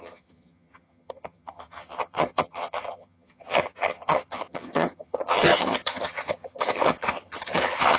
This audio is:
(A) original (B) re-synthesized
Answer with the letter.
B